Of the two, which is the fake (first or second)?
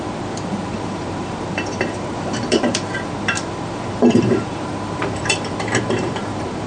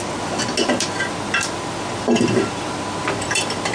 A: first